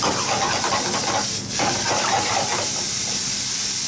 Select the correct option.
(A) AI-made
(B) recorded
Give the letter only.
B